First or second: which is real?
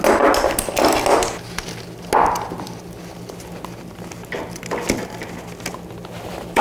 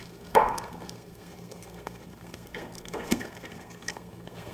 first